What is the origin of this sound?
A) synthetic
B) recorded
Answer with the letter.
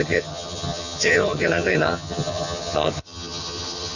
A